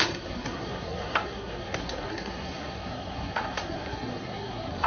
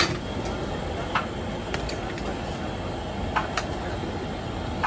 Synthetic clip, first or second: first